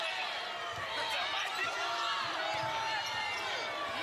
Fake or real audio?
real